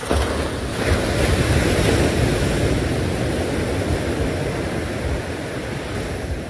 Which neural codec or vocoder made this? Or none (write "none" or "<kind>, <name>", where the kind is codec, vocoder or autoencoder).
none